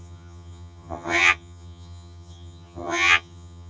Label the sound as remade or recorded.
remade